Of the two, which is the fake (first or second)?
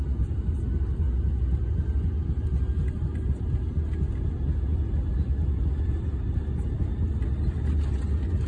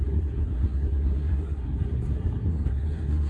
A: second